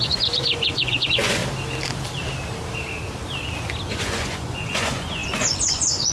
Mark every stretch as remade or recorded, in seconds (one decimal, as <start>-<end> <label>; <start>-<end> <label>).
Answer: 0.0-1.4 remade; 1.4-3.9 recorded; 3.9-6.1 remade